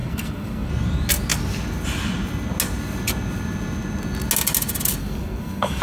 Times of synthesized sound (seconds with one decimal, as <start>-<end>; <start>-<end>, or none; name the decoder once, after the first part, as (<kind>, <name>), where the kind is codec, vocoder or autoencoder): 0.0-0.7 (codec, SNAC); 5.0-5.8